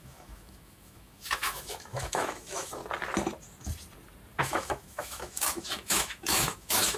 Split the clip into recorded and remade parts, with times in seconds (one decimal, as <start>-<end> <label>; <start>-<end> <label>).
0.0-2.8 remade; 2.8-4.4 recorded; 4.4-7.0 remade